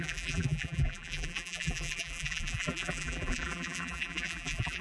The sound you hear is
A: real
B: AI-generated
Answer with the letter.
B